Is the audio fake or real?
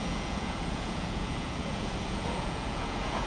fake